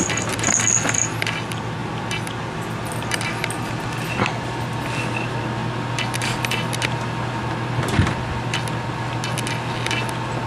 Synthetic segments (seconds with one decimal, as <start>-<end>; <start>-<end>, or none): none